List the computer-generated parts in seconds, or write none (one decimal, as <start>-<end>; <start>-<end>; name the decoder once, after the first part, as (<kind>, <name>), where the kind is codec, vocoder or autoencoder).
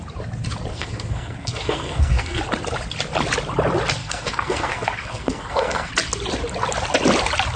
0.7-2.4 (codec, SNAC); 4.0-5.9